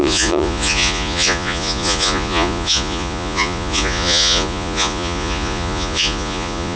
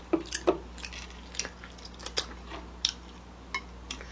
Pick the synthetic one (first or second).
first